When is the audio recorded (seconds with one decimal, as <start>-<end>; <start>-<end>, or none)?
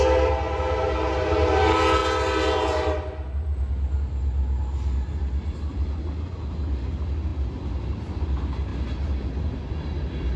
0.0-10.4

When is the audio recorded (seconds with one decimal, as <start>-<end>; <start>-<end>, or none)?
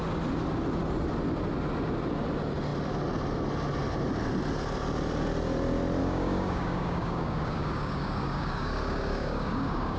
0.0-6.0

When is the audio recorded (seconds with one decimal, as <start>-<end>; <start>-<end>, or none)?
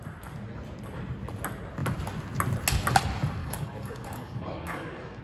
0.0-3.4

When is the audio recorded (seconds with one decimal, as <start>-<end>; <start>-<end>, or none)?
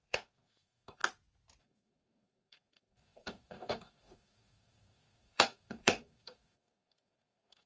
1.0-1.6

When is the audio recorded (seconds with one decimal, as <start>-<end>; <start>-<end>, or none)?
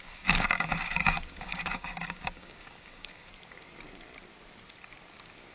3.3-5.5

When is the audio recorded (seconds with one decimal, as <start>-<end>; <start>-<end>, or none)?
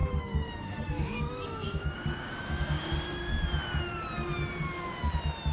3.3-5.5